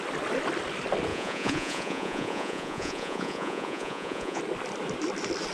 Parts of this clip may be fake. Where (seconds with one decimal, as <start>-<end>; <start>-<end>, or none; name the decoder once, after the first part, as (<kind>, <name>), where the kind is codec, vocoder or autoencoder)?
1.1-4.4 (vocoder, Vocos)